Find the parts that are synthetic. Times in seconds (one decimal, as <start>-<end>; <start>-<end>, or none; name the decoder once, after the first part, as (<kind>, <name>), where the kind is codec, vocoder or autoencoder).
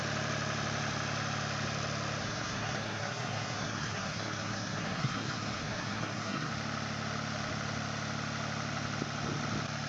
2.2-6.5 (codec, SNAC)